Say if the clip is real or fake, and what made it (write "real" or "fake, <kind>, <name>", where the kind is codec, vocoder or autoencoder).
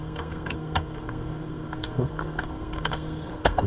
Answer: fake, codec, SNAC